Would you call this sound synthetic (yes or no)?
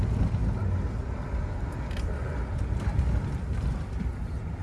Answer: no